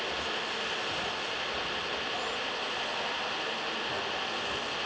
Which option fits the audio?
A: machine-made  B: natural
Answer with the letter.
B